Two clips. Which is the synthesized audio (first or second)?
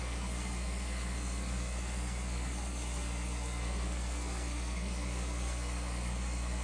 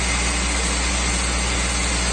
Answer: first